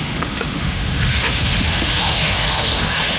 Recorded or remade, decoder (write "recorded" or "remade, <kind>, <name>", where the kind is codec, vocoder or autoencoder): remade, autoencoder, DAC-VAE